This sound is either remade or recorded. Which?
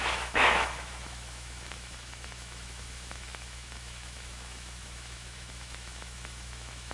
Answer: remade